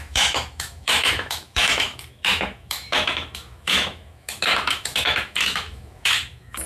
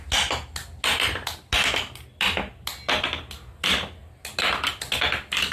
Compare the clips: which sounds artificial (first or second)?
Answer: first